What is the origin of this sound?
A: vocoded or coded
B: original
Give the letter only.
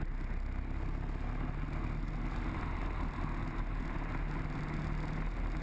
B